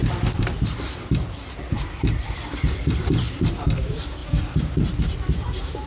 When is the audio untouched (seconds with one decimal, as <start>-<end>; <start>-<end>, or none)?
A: none